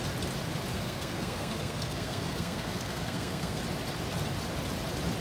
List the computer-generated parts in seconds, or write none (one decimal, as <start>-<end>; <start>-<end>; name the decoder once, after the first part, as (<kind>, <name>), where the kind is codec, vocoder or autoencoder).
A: 0.7-3.6 (codec, SNAC)